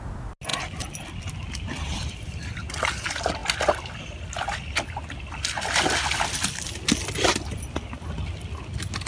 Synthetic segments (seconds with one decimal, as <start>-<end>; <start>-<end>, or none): 0.5-2.7